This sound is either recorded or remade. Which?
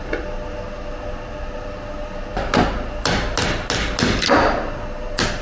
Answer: recorded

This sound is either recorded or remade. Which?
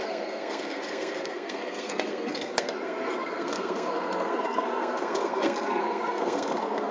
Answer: remade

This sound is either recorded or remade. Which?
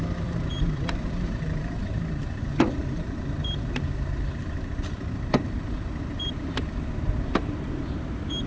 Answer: remade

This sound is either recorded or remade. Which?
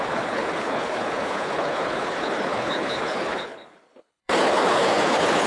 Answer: remade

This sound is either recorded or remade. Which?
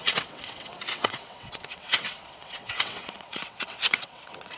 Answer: remade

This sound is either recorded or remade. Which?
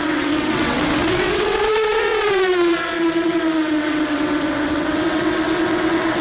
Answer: remade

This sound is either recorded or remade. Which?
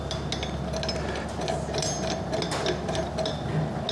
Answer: recorded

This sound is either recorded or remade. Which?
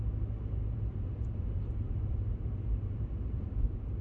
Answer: remade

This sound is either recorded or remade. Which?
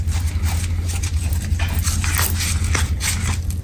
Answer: recorded